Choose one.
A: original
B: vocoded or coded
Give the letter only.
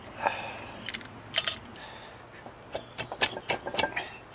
A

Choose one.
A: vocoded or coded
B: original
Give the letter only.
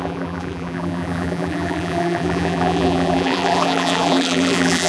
A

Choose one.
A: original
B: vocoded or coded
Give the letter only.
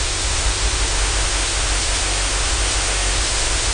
B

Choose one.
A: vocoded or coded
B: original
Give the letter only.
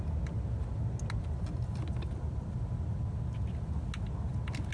B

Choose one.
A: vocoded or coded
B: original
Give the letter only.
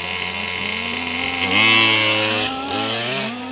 B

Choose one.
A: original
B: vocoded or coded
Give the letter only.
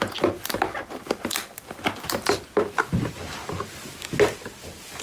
A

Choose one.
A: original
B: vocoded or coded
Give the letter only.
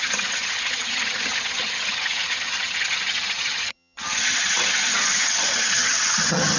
B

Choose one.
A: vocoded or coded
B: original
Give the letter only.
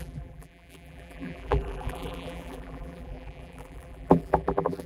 A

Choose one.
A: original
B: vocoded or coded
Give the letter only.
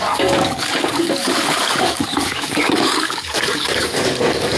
B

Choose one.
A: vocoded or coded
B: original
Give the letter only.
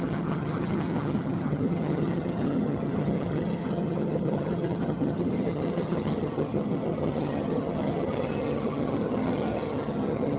A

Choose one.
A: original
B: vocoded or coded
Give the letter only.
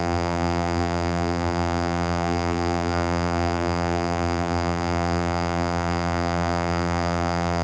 B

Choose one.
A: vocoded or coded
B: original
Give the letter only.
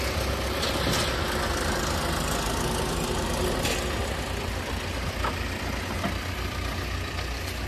B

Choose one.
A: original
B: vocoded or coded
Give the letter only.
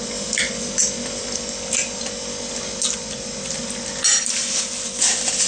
A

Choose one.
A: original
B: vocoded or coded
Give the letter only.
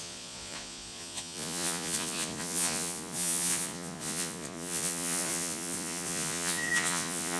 B